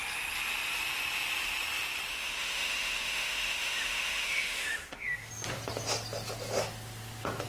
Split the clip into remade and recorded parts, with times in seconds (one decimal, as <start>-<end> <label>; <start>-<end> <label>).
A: 0.0-2.1 recorded; 2.1-5.3 remade; 5.3-7.5 recorded